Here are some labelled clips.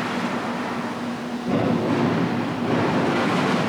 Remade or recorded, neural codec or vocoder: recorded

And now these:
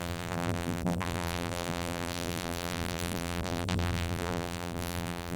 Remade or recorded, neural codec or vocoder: remade, vocoder, BigVGAN v2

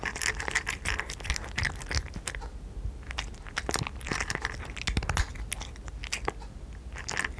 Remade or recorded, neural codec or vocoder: recorded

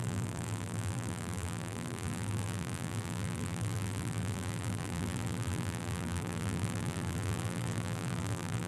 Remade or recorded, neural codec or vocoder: remade, vocoder, BigVGAN v2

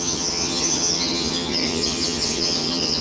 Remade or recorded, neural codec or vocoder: remade, vocoder, HiFi-GAN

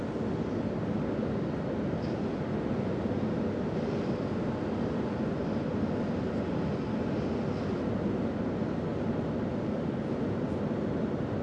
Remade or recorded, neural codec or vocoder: recorded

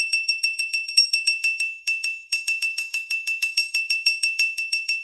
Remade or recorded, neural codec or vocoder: remade, autoencoder, DAC-VAE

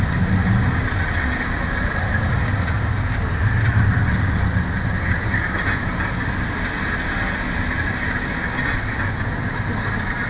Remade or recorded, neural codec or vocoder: recorded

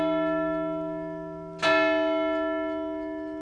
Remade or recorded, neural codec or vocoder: recorded